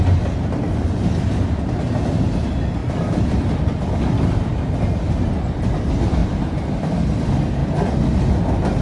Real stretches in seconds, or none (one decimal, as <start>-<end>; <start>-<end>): 0.0-2.8; 4.8-6.2; 6.9-7.6; 8.4-8.8